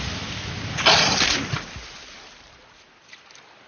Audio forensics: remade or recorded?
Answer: recorded